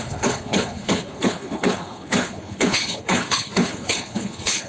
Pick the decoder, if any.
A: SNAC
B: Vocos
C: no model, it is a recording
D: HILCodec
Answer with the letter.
D